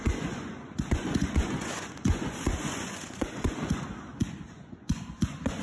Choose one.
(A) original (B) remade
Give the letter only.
B